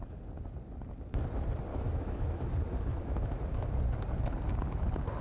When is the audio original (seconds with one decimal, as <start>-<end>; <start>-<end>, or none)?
0.0-1.7; 2.5-2.9; 3.4-5.2